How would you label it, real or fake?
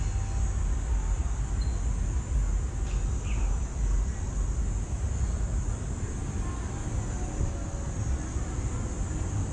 real